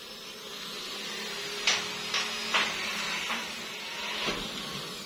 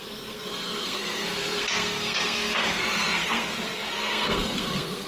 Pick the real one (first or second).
first